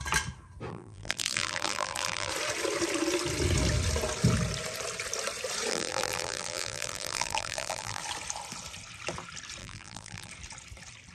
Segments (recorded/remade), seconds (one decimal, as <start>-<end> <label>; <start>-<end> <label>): 0.0-0.7 recorded; 0.7-2.3 remade; 2.3-5.7 recorded; 5.7-8.0 remade; 8.0-9.6 recorded; 9.6-10.3 remade; 10.3-11.1 recorded